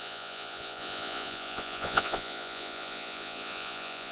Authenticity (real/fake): fake